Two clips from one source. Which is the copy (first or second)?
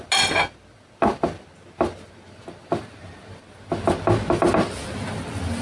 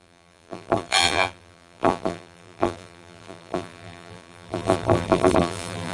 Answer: second